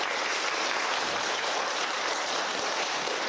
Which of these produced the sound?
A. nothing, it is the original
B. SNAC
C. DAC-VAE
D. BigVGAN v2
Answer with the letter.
D